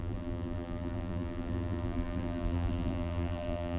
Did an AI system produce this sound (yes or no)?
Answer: yes